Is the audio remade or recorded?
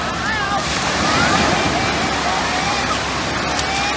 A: recorded